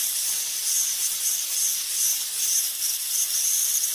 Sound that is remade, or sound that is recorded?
recorded